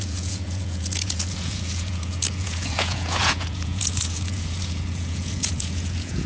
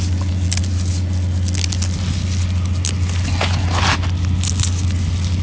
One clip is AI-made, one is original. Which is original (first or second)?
second